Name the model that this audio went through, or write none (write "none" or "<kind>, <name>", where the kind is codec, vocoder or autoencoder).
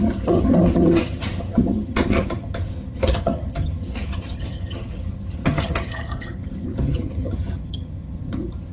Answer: vocoder, HiFi-GAN